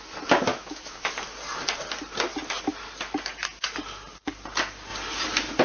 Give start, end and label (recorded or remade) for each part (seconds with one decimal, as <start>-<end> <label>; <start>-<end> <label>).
0.0-0.5 recorded; 0.5-1.1 remade; 1.1-5.6 recorded